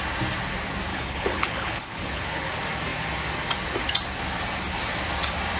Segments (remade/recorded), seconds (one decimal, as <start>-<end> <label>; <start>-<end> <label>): 0.0-0.9 recorded; 0.9-2.5 remade; 2.5-5.6 recorded